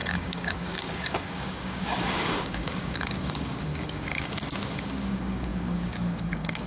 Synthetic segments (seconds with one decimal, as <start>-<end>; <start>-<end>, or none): 0.0-6.7